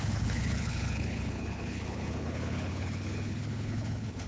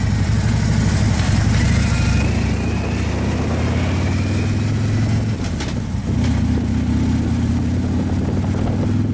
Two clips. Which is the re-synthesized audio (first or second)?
first